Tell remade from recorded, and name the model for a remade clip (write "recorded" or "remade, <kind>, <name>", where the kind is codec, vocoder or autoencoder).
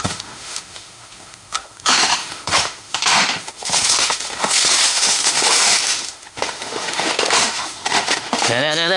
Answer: remade, autoencoder, DAC-VAE